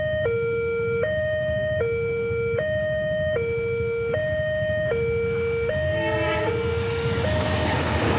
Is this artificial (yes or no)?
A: yes